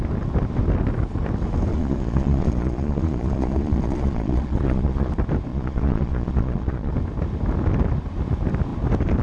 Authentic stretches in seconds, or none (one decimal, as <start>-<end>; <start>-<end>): 0.0-1.7; 5.1-5.5; 6.9-9.2